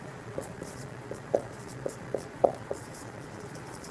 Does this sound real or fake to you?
fake